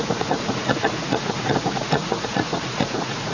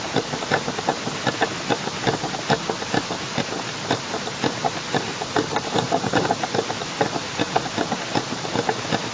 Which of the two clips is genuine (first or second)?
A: second